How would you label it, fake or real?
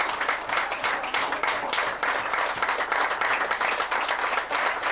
real